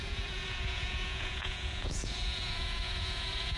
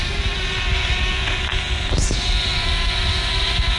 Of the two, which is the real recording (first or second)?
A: second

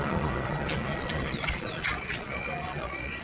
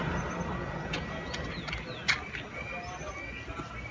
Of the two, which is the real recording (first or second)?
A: second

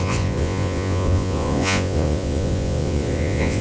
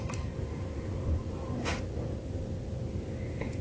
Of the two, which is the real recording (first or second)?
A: second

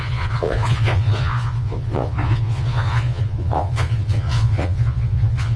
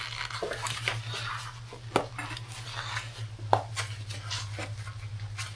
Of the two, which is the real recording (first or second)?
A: second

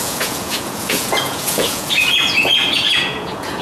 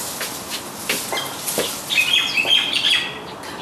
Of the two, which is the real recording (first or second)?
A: second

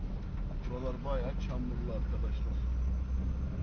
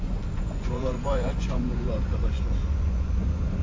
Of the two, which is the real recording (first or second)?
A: first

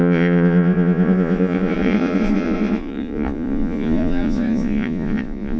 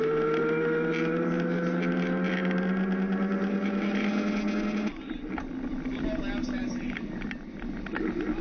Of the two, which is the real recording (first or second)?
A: second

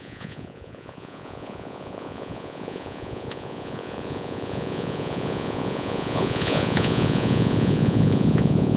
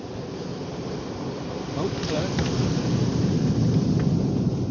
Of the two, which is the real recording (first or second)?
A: second